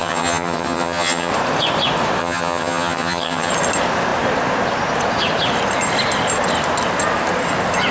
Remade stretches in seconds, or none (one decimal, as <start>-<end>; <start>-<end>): 0.0-1.3; 2.2-3.5